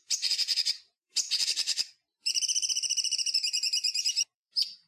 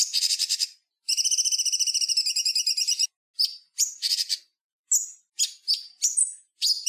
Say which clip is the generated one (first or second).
first